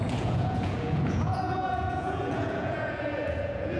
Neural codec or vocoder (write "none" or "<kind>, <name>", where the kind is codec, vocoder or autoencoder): vocoder, Vocos